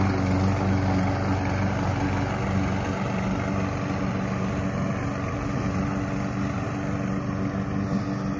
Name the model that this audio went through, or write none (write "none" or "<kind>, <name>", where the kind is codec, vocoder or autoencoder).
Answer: none